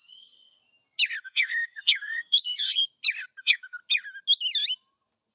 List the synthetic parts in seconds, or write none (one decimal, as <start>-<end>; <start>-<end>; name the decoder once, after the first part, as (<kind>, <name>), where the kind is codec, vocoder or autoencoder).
0.0-0.6 (codec, SNAC); 1.2-2.8; 3.4-3.8